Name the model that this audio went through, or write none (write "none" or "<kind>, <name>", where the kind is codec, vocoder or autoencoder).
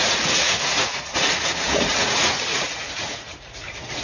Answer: vocoder, Vocos